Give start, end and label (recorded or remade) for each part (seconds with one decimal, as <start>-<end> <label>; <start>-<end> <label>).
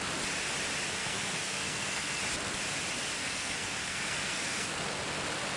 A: 0.0-1.0 recorded; 1.0-2.2 remade; 2.2-3.2 recorded; 3.2-4.8 remade; 4.8-5.6 recorded